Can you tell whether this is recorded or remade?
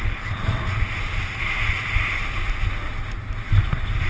recorded